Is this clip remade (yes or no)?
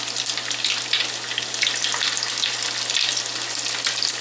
no